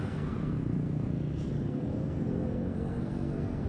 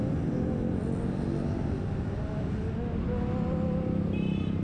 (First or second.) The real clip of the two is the second